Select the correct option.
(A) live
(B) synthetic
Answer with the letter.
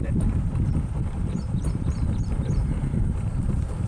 B